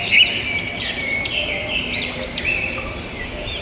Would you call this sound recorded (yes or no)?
no